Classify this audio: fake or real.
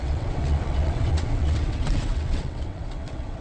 fake